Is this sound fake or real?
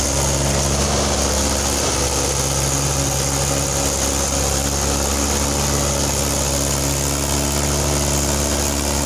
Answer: real